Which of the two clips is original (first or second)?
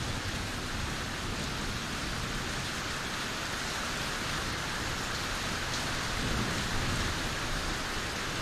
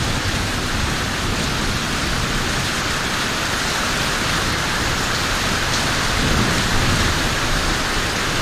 first